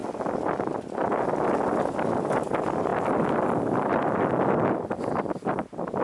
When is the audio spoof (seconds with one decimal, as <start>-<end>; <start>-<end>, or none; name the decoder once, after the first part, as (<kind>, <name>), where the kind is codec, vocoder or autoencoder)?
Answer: none